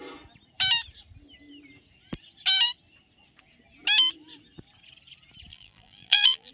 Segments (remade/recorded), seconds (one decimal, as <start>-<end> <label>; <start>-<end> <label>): 0.0-5.5 recorded; 5.5-6.5 remade